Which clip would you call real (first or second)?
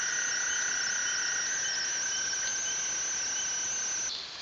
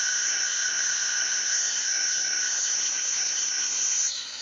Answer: first